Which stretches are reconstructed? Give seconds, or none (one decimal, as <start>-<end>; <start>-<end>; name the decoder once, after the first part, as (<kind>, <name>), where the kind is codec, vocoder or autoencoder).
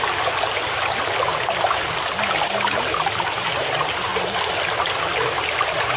none